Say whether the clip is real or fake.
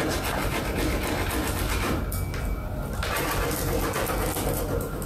real